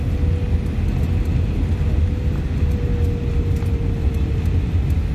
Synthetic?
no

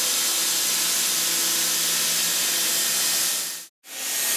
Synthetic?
no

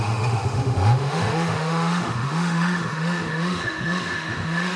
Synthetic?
yes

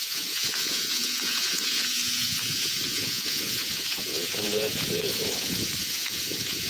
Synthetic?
yes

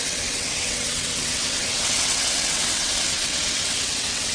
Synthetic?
yes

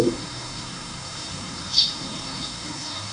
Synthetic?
yes